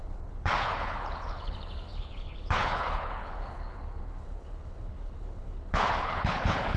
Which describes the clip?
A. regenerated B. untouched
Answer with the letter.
A